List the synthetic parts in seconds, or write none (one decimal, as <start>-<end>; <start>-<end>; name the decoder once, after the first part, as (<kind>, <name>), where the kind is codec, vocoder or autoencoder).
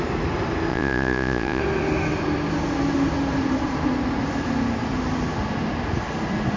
0.7-1.6 (vocoder, Vocos)